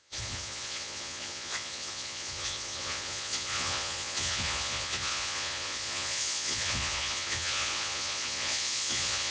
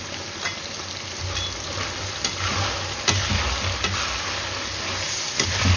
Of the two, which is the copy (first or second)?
first